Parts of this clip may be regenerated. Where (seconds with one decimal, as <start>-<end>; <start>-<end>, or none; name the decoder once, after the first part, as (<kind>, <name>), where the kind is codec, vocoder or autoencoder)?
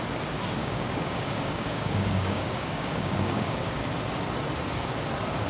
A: 0.6-3.9 (codec, DAC)